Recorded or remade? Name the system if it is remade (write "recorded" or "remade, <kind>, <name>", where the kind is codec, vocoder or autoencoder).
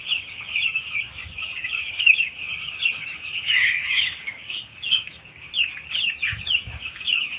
remade, codec, DAC